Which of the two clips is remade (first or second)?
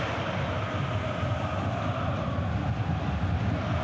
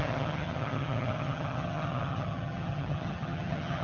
second